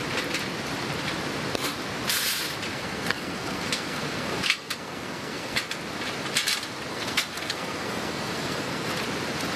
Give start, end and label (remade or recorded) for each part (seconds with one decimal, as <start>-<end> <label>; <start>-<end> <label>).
0.0-2.7 recorded; 2.7-5.8 remade; 5.8-6.9 recorded; 6.9-8.9 remade; 8.9-9.6 recorded